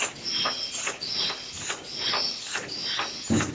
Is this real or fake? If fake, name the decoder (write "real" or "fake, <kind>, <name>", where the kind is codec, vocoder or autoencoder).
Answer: real